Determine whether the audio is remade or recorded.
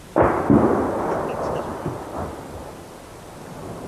recorded